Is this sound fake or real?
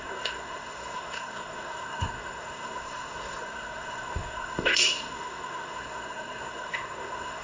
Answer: fake